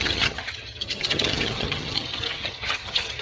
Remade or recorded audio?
remade